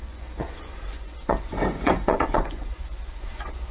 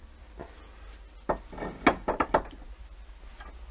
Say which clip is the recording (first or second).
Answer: second